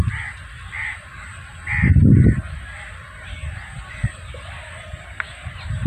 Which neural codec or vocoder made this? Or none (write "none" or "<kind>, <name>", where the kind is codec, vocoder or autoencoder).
none